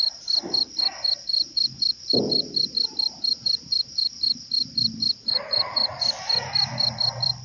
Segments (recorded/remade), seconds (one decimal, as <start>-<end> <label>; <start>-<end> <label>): 0.0-1.3 remade; 1.3-2.2 recorded; 2.2-7.4 remade